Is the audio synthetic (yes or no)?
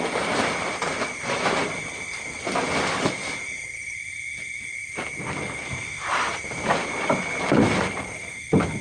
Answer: yes